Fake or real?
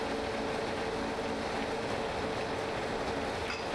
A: real